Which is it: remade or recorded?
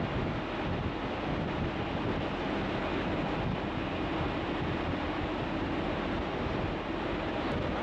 recorded